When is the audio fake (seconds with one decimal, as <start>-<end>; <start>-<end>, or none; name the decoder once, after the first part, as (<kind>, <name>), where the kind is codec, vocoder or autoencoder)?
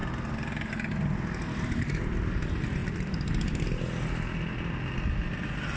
none